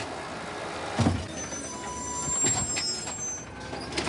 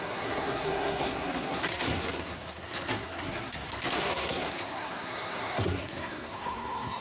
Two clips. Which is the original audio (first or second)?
first